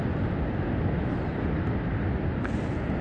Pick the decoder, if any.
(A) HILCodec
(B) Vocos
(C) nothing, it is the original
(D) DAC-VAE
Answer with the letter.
C